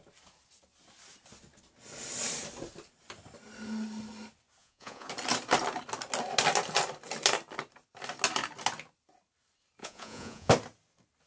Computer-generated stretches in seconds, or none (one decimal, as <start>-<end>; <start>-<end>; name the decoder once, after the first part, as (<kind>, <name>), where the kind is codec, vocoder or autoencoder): 4.6-5.1 (vocoder, Vocos); 9.8-10.5

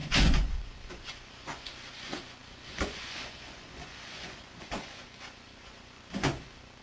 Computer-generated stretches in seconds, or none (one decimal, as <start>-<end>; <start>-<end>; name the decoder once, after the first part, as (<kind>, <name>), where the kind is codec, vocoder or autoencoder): 0.0-6.8 (vocoder, Vocos)

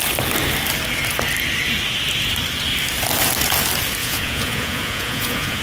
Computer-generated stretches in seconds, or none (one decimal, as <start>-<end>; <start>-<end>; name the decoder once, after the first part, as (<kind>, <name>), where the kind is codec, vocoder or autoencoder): 4.0-5.6 (vocoder, Vocos)

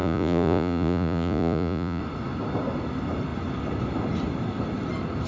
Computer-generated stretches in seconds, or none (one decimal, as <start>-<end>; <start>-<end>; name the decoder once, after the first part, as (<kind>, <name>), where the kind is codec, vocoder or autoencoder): 0.0-2.0 (vocoder, Vocos)

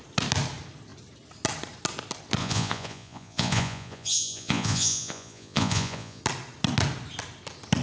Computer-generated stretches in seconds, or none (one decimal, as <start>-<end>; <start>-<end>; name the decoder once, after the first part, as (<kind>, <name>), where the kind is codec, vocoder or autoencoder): 2.4-6.2 (vocoder, Vocos)